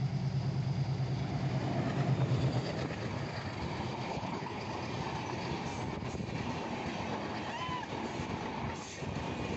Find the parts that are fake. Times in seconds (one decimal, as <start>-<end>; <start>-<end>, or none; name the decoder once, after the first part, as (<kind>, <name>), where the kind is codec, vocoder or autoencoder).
4.1-4.6 (codec, HILCodec)